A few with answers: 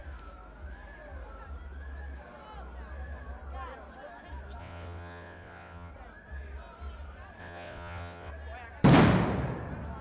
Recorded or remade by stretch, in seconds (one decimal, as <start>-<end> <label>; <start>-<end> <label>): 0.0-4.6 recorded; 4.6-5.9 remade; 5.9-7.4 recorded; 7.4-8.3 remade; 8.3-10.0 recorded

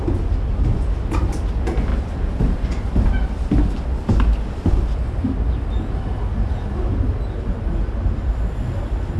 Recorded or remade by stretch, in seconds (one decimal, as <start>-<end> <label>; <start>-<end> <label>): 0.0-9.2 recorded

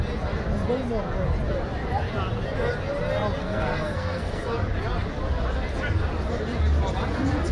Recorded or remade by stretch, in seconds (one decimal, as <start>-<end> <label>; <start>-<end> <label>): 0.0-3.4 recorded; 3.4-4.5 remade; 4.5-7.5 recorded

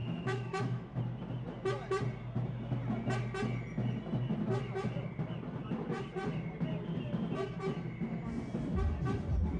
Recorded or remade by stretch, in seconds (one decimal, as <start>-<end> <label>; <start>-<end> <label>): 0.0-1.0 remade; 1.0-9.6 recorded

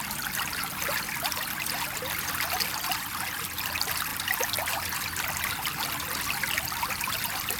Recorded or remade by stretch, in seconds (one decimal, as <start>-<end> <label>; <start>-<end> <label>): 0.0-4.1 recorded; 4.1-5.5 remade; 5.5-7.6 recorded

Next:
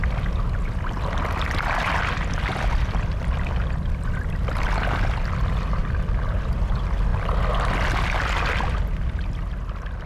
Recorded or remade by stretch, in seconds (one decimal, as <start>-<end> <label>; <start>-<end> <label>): 0.0-10.1 recorded